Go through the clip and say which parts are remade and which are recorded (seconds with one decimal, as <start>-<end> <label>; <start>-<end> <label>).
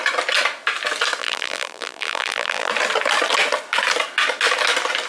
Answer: 0.0-1.2 recorded; 1.2-2.7 remade; 2.7-5.1 recorded